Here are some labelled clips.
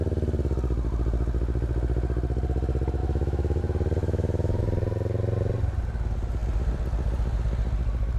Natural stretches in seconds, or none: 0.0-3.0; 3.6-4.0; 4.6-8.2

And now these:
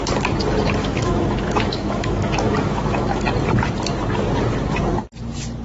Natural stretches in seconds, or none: 0.0-0.8; 3.2-5.6